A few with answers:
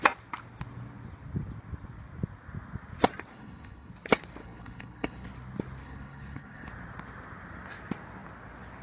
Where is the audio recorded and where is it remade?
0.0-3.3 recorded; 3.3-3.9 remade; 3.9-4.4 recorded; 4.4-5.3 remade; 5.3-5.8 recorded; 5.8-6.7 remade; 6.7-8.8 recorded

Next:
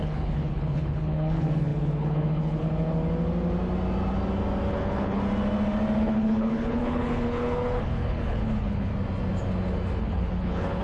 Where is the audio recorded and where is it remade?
0.0-3.0 remade; 3.0-4.7 recorded; 4.7-5.2 remade; 5.2-6.0 recorded; 6.0-8.9 remade; 8.9-10.0 recorded; 10.0-10.8 remade

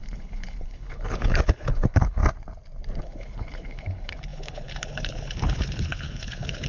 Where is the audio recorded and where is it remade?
0.0-2.2 remade; 2.2-3.0 recorded; 3.0-6.7 remade

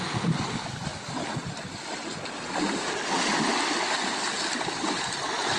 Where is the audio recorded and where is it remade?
0.0-5.6 recorded